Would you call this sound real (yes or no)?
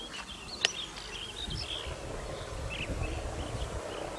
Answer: yes